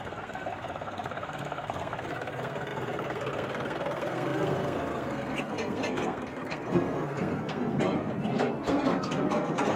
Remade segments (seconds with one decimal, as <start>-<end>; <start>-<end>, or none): 0.0-9.8